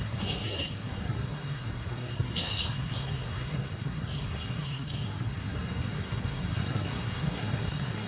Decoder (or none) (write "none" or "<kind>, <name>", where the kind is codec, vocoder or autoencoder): codec, SNAC